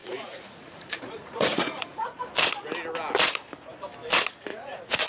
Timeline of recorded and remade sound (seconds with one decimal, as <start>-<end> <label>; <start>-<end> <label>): 0.0-2.2 remade; 2.2-4.5 recorded; 4.5-5.1 remade